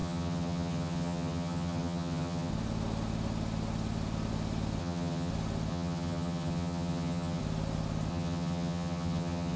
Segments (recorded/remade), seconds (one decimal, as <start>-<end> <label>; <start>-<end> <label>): 0.0-2.5 remade; 2.5-4.8 recorded; 4.8-5.3 remade; 5.3-5.7 recorded; 5.7-7.4 remade; 7.4-8.1 recorded; 8.1-9.6 remade